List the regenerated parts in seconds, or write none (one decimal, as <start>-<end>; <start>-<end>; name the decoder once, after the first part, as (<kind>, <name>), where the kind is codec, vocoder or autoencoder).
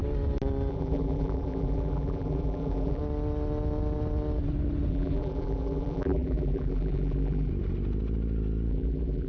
0.7-3.0 (vocoder, BigVGAN v2); 4.9-7.5; 8.7-9.3